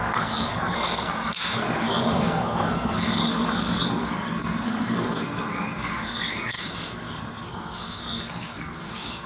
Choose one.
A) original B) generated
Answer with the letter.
B